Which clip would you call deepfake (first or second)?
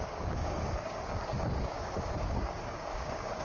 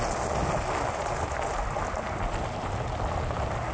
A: first